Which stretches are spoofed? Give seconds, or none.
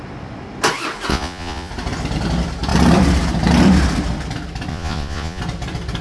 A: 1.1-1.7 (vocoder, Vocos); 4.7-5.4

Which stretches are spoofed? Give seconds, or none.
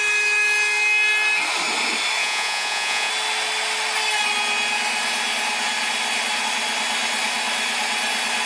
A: 2.2-3.1 (vocoder, Vocos)